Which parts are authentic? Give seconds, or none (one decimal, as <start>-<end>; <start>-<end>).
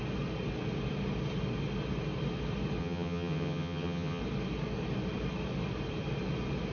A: 0.0-2.8; 4.2-6.7